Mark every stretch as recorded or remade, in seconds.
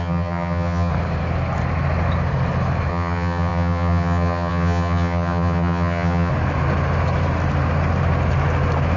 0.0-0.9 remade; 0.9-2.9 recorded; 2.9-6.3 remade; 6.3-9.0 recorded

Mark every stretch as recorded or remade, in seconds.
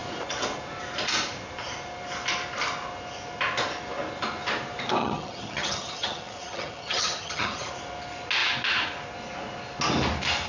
0.0-5.0 recorded; 5.0-7.7 remade; 7.7-10.5 recorded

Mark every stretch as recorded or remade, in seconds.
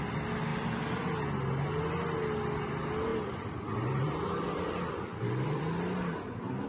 0.0-0.5 recorded; 0.5-1.0 remade; 1.0-3.1 recorded; 3.1-5.6 remade; 5.6-6.7 recorded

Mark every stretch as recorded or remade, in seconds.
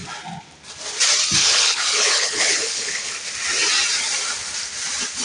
0.0-1.4 recorded; 1.4-3.1 remade; 3.1-5.2 recorded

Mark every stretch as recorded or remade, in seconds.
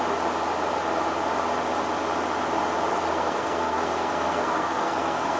0.0-2.9 recorded; 2.9-5.4 remade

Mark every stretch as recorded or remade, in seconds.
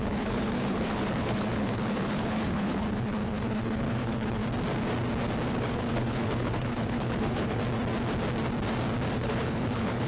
0.0-4.4 remade; 4.4-5.5 recorded; 5.5-7.6 remade; 7.6-9.1 recorded; 9.1-10.1 remade